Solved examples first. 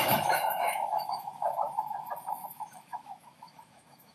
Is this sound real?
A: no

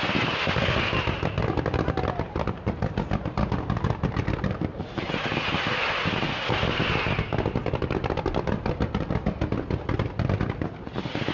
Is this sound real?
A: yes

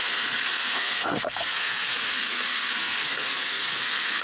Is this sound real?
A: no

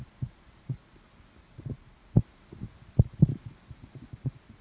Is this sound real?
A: yes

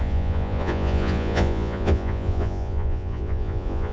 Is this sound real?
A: no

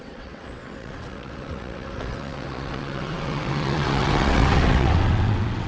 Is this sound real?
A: no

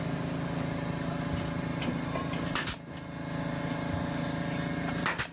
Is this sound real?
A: yes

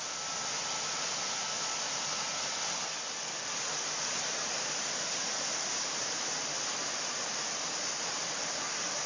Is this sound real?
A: yes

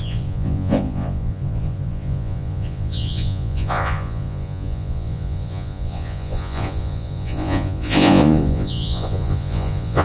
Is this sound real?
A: no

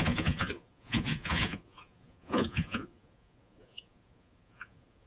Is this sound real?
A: no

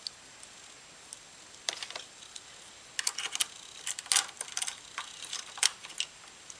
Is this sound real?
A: yes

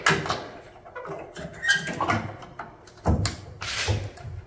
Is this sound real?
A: yes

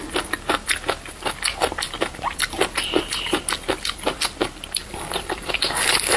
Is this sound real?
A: yes